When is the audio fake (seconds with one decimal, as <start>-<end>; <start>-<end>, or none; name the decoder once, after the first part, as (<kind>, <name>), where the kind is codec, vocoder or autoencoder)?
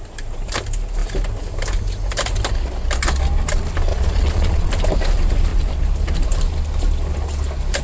3.9-4.7 (vocoder, Vocos)